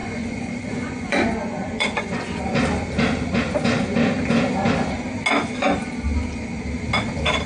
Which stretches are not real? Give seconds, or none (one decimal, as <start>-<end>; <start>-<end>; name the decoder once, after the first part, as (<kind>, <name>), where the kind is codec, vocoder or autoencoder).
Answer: 0.0-2.4 (vocoder, Vocos)